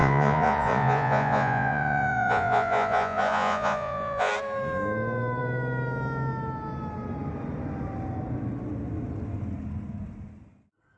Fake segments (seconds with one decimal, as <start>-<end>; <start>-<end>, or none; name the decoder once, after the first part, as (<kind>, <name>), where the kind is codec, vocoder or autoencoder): 0.0-4.3 (vocoder, Vocos)